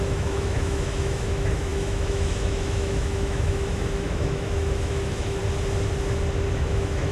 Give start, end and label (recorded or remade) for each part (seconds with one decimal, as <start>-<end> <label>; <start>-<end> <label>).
0.0-5.4 remade; 5.4-6.5 recorded; 6.5-7.1 remade